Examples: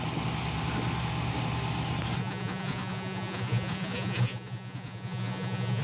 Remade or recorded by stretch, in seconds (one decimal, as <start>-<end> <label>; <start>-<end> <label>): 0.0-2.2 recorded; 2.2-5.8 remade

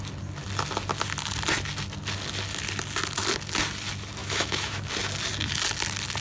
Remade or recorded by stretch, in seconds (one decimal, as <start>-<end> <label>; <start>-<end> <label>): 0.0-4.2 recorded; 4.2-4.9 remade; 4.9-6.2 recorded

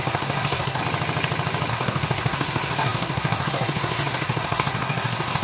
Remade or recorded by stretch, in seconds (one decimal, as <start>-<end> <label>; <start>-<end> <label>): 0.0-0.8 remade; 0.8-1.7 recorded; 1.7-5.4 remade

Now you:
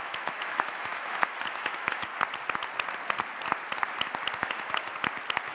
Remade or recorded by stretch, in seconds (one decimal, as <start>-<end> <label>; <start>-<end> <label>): 0.0-2.1 remade; 2.1-4.4 recorded; 4.4-4.9 remade; 4.9-5.5 recorded

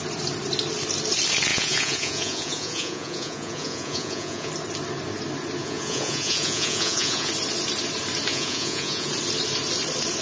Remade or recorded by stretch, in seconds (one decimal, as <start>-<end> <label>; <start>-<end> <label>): 0.0-1.5 recorded; 1.5-4.5 remade; 4.5-5.6 recorded; 5.6-7.3 remade; 7.3-8.3 recorded; 8.3-9.1 remade; 9.1-10.2 recorded

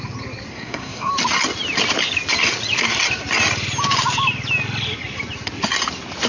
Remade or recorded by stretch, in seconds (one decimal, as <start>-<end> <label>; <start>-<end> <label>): 0.0-0.5 recorded; 0.5-1.1 remade; 1.1-6.3 recorded

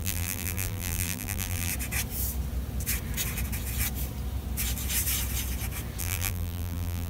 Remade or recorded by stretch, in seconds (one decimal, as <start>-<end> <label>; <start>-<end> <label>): 0.0-1.7 remade; 1.7-6.0 recorded; 6.0-7.1 remade